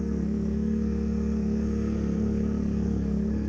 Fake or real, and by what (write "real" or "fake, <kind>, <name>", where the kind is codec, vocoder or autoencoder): fake, codec, SNAC